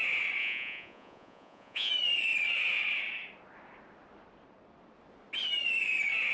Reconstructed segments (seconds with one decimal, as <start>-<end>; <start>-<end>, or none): 0.4-1.9